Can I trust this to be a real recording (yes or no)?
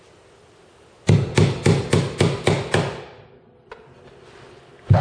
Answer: yes